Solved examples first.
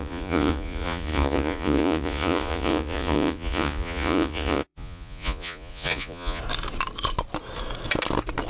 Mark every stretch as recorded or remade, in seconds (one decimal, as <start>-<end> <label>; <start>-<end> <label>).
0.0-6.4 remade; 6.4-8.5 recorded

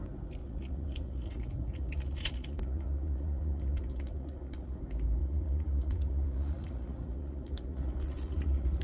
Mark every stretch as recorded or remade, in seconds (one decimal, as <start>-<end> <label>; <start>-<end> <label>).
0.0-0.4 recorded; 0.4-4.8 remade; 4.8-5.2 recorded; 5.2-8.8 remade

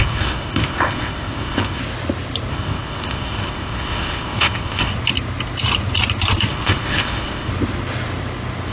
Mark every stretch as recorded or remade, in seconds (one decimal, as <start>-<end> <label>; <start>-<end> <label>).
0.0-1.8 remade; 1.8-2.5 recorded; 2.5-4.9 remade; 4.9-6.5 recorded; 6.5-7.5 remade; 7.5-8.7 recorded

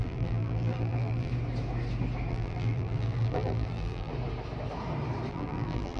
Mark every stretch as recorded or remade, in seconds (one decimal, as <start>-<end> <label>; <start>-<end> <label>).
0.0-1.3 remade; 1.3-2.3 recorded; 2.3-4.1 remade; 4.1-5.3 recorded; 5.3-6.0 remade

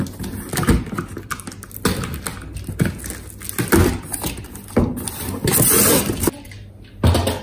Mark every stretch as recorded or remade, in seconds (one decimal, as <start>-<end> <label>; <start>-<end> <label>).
0.0-7.4 recorded

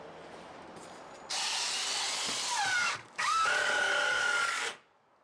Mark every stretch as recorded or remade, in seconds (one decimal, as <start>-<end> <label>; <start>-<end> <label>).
0.0-2.8 recorded; 2.8-5.2 remade

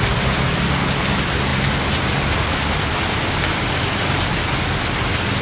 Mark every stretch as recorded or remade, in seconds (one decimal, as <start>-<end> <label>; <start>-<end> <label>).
0.0-5.4 recorded